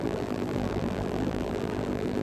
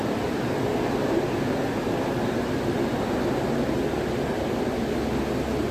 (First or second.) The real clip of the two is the second